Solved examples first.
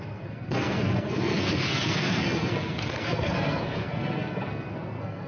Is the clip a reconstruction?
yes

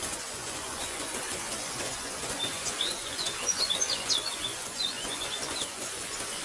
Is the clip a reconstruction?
yes